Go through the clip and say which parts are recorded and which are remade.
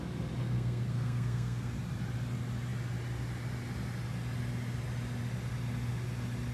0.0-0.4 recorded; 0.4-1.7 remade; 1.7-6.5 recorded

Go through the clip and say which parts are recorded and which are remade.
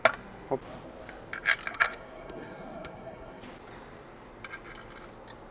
0.0-1.7 recorded; 1.7-3.4 remade; 3.4-5.5 recorded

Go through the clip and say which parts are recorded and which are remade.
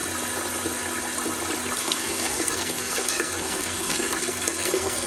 0.0-1.8 recorded; 1.8-5.1 remade